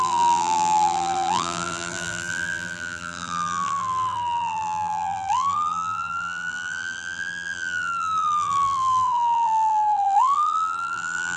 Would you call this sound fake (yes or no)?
yes